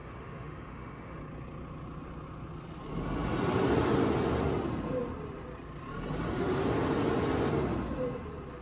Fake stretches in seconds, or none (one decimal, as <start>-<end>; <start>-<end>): 0.0-1.2